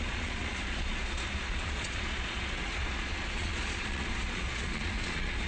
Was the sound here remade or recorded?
remade